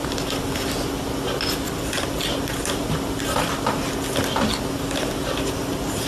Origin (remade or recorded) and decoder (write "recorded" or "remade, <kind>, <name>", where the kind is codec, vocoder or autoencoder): recorded